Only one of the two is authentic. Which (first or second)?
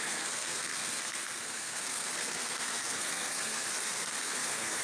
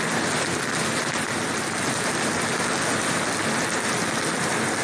second